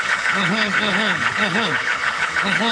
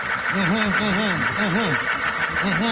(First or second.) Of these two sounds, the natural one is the second